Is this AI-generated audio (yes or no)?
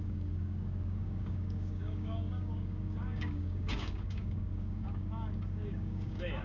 yes